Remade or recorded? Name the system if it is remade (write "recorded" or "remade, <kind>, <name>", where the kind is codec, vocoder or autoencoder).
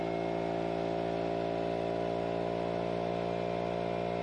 recorded